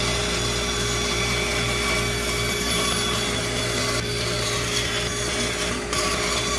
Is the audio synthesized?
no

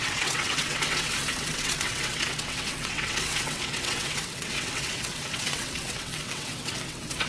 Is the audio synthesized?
yes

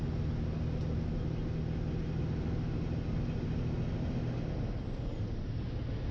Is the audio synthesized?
no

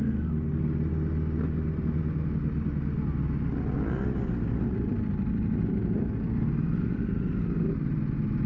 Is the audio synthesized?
no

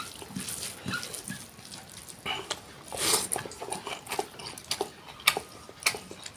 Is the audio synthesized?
no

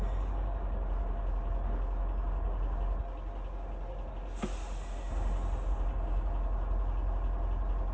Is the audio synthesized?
no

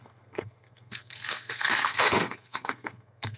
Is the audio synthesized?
yes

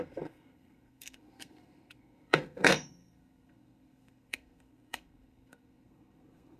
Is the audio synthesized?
yes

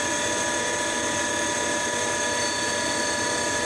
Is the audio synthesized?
no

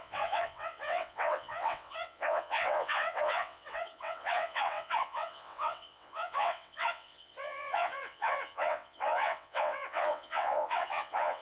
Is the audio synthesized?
yes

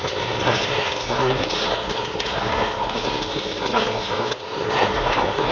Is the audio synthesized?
yes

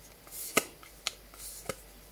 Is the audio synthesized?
no